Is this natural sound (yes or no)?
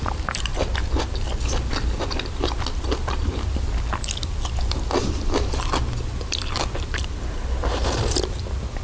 yes